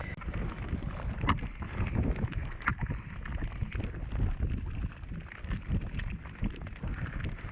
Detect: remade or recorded recorded